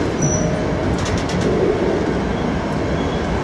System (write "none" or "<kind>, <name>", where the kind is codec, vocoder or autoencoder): none